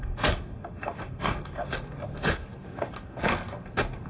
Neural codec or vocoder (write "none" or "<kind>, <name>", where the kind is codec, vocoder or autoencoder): codec, SNAC